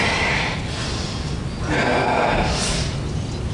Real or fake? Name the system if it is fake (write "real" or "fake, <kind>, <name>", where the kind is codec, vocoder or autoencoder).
real